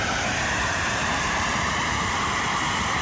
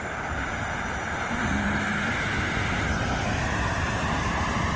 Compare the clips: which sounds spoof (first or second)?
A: first